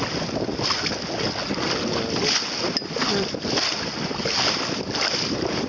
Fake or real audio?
real